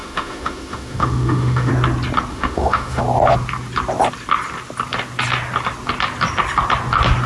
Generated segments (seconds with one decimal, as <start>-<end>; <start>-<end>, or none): 0.0-1.7; 2.3-3.0